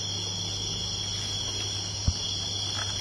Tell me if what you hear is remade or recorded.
recorded